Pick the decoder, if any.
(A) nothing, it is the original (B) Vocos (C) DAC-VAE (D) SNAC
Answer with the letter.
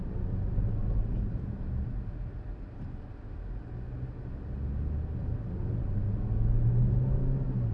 A